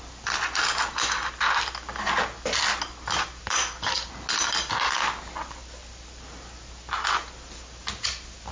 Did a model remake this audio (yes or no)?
no